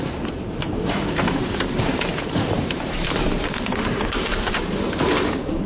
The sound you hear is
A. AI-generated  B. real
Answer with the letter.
A